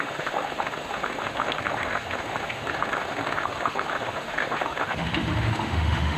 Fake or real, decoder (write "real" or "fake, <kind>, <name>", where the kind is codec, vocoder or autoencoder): fake, autoencoder, DAC-VAE